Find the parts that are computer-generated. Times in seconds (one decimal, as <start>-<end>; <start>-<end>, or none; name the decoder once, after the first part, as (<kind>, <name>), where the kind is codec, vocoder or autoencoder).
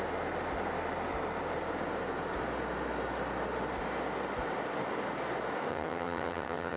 5.7-6.8 (vocoder, HiFi-GAN)